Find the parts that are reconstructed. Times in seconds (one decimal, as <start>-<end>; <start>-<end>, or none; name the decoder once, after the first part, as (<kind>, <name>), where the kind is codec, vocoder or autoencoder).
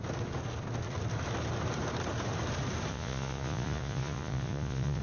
2.9-5.0 (vocoder, Vocos)